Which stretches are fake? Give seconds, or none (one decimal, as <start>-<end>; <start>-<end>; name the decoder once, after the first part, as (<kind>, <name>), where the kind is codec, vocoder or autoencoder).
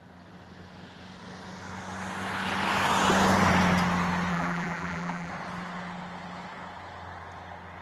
4.3-5.3 (vocoder, BigVGAN v2)